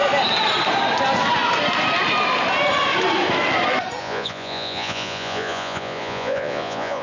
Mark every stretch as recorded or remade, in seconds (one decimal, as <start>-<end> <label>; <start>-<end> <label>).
0.0-4.0 recorded; 4.0-7.0 remade